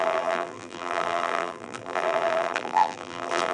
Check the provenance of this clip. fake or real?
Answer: fake